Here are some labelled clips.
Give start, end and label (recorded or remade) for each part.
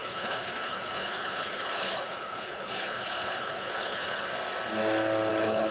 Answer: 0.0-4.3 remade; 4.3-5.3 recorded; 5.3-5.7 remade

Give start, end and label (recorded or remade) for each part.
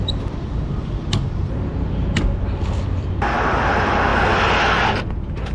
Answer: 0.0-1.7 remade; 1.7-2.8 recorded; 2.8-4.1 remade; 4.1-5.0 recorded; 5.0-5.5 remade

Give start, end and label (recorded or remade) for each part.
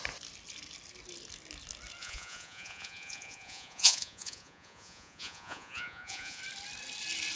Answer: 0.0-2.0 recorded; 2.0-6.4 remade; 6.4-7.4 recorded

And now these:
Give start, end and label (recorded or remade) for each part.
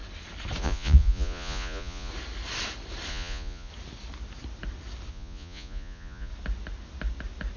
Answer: 0.0-0.6 recorded; 0.6-2.1 remade; 2.1-3.1 recorded; 3.1-3.7 remade; 3.7-5.1 recorded; 5.1-6.3 remade; 6.3-7.6 recorded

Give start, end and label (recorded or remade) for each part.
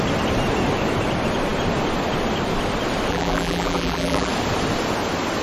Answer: 0.0-3.1 recorded; 3.1-4.3 remade; 4.3-5.4 recorded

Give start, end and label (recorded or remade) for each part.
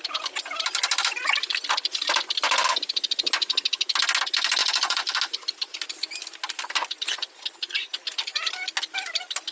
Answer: 0.0-4.6 recorded; 4.6-5.1 remade; 5.1-9.5 recorded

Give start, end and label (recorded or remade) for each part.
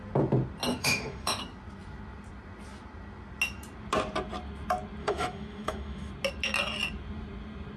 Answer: 0.0-0.7 recorded; 0.7-1.4 remade; 1.4-5.0 recorded; 5.0-6.1 remade; 6.1-7.8 recorded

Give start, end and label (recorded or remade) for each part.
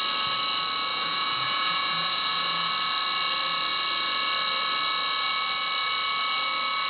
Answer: 0.0-0.9 recorded; 0.9-2.7 remade; 2.7-6.9 recorded